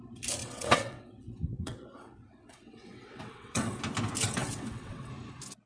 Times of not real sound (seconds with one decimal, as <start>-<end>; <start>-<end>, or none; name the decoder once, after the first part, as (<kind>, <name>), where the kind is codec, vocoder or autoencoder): 0.4-3.8 (vocoder, WaveNeXt); 4.4-5.1